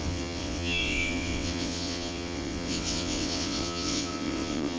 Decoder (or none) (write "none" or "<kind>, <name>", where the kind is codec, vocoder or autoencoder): vocoder, WaveNeXt